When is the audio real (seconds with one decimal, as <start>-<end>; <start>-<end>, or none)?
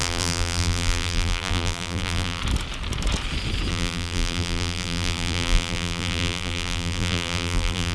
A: 2.4-3.7